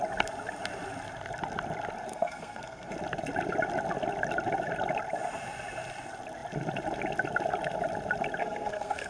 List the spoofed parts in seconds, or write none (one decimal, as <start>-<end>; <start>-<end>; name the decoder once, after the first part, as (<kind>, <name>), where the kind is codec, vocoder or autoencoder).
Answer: 2.1-2.9 (codec, SNAC); 8.4-9.1